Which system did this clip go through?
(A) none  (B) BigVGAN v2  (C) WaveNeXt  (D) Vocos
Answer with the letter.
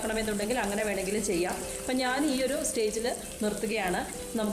B